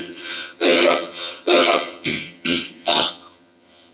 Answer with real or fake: fake